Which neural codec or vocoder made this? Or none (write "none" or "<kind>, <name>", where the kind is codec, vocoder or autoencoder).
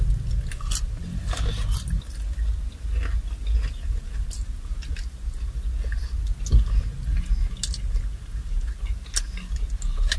none